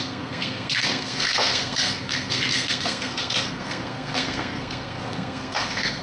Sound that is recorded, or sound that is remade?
remade